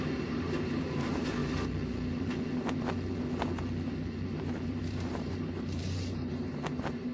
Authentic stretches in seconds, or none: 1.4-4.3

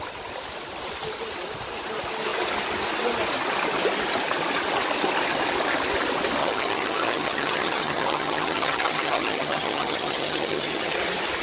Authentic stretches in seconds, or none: 0.0-6.4; 11.0-11.4

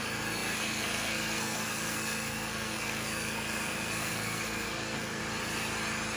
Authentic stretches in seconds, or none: 5.2-6.2

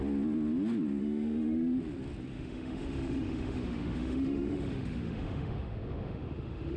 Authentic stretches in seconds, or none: 0.0-1.0; 1.8-2.3